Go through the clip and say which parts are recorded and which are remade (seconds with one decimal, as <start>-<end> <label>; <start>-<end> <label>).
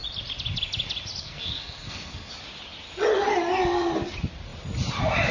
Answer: 0.0-1.2 recorded; 1.2-2.3 remade; 2.3-5.3 recorded